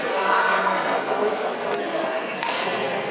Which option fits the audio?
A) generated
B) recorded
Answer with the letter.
A